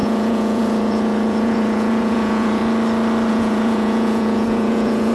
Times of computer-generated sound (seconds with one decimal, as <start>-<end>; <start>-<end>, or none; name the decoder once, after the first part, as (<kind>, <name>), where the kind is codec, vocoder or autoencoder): 0.0-2.6 (vocoder, Vocos); 3.3-5.1